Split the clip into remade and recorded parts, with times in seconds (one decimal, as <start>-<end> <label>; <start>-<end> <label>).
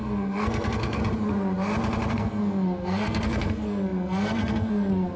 0.0-1.0 remade; 1.0-2.1 recorded; 2.1-5.2 remade